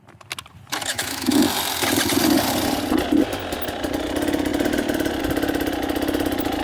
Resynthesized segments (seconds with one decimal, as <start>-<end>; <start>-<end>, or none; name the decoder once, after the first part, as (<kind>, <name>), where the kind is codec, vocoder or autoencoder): 0.9-1.4 (autoencoder, DAC-VAE)